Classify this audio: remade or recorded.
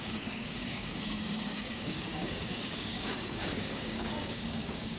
remade